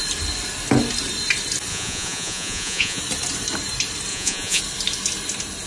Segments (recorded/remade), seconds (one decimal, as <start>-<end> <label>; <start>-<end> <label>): 0.0-1.7 recorded; 1.7-3.0 remade; 3.0-4.1 recorded; 4.1-4.6 remade; 4.6-5.7 recorded